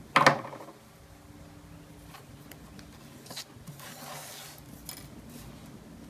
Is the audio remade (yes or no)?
no